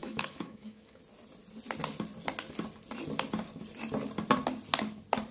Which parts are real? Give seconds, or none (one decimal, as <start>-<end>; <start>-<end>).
1.0-5.3